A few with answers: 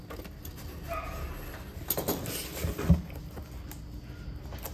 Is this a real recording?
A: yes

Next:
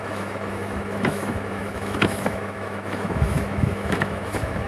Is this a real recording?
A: no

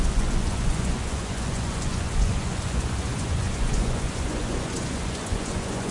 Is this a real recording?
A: no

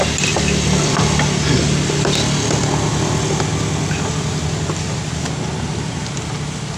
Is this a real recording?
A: yes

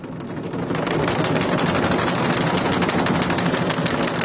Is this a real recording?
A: yes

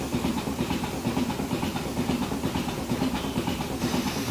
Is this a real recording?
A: no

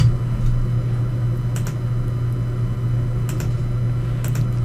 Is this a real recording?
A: yes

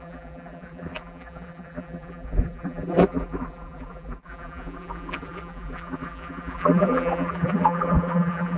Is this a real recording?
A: no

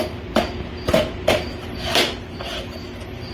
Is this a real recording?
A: yes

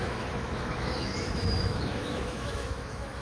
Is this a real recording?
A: no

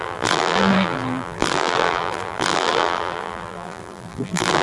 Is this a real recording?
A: no